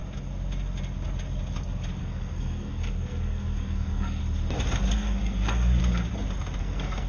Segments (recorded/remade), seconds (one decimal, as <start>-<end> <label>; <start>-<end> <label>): 0.0-2.0 recorded; 2.0-4.2 remade; 4.2-4.9 recorded; 4.9-5.8 remade; 5.8-6.6 recorded; 6.6-7.1 remade